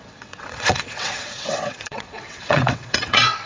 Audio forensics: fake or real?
fake